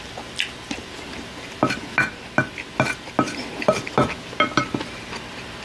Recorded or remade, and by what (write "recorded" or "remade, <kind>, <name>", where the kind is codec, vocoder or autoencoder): recorded